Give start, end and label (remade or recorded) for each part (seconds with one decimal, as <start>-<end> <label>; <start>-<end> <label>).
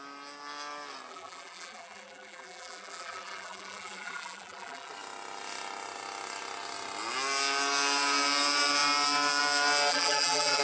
0.0-1.1 recorded; 1.1-4.9 remade; 4.9-9.9 recorded; 9.9-10.6 remade